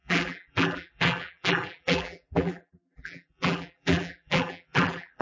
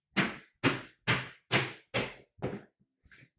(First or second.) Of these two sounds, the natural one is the second